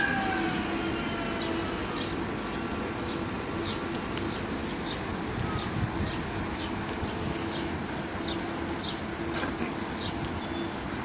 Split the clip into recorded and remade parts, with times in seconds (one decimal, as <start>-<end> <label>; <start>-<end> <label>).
0.0-11.0 recorded